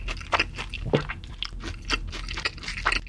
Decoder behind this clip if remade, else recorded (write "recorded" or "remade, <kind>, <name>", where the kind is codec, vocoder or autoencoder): recorded